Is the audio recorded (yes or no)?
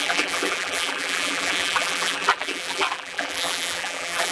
no